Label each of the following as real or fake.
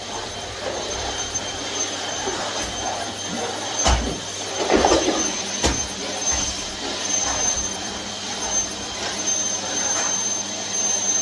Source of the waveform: fake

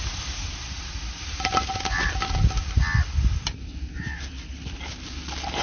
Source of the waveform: real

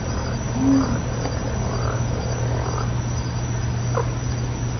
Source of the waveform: real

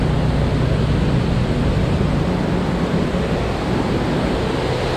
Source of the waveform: real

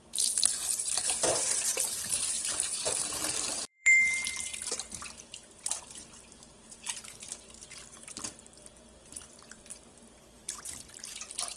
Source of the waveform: fake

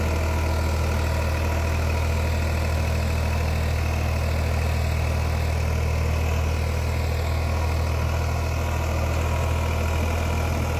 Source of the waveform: real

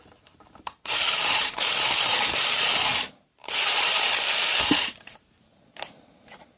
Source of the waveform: fake